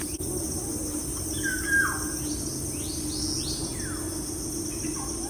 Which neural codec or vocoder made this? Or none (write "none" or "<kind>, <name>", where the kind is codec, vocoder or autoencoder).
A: none